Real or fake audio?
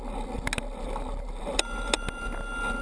real